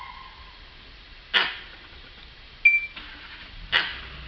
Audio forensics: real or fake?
real